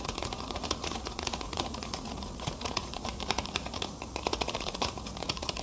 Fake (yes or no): yes